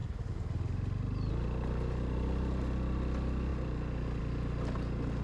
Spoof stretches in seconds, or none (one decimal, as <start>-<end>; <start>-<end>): none